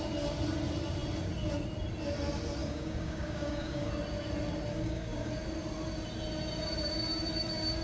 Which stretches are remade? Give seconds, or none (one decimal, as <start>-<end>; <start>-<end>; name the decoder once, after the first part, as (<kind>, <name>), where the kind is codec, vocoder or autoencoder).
2.6-3.9 (codec, DAC); 4.7-5.3